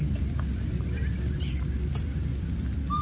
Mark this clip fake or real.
fake